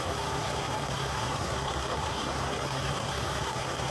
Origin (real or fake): fake